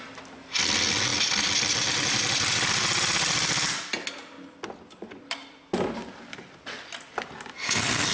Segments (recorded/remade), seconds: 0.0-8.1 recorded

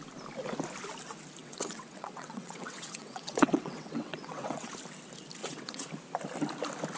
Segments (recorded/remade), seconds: 0.0-1.4 recorded; 1.4-4.7 remade; 4.7-5.4 recorded; 5.4-5.9 remade; 5.9-7.0 recorded

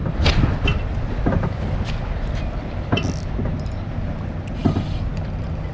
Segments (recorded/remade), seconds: 0.0-5.7 recorded